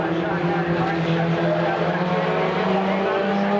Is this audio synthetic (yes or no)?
no